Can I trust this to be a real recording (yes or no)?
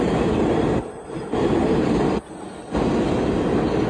yes